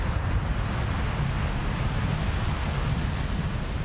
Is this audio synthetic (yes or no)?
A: no